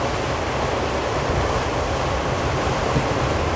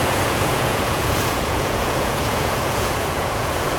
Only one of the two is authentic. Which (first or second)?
first